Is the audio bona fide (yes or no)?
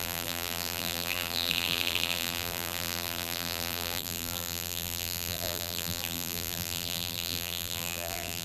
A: no